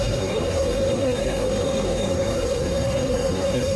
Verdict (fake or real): fake